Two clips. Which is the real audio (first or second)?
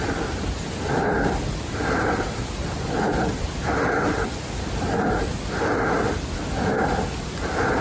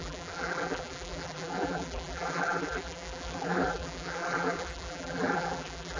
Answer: first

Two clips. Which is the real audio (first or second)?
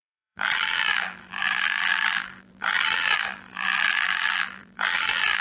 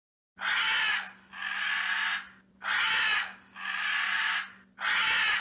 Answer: second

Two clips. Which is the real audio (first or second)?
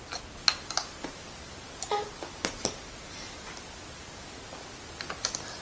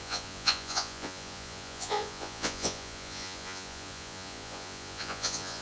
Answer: first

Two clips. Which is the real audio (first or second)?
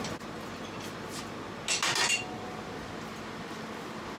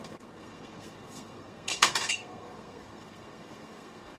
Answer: first